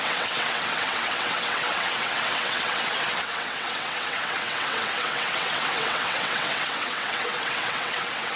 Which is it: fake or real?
fake